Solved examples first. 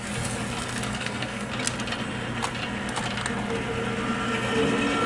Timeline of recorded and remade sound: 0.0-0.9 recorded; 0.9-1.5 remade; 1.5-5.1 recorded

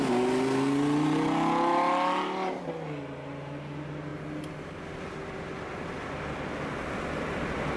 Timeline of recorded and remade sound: 0.0-7.8 recorded

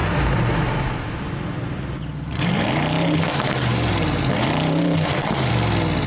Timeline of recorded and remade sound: 0.0-3.2 remade; 3.2-3.7 recorded; 3.7-5.5 remade; 5.5-6.1 recorded

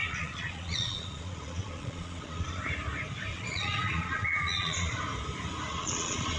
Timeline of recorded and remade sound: 0.0-2.6 remade; 2.6-3.3 recorded; 3.3-5.0 remade; 5.0-5.7 recorded; 5.7-6.4 remade

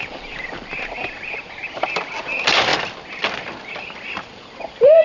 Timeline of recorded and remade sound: 0.0-1.6 remade; 1.6-2.2 recorded; 2.2-2.7 remade; 2.7-3.7 recorded; 3.7-5.0 remade

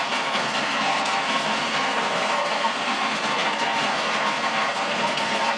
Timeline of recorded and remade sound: 0.0-5.6 remade